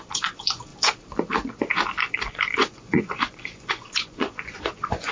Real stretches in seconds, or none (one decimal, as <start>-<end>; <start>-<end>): 0.7-2.3